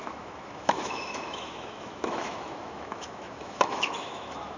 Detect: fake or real fake